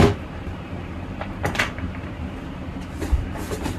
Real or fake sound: fake